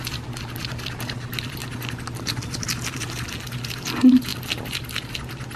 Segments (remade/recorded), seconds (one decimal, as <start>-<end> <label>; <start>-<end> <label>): 0.0-5.6 recorded